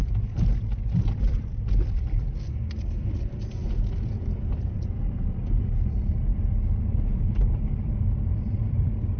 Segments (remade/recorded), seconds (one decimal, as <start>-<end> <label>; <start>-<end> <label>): 0.0-2.0 recorded; 2.0-3.6 remade; 3.6-4.5 recorded; 4.5-9.2 remade